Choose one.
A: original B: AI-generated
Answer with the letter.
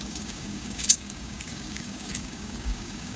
B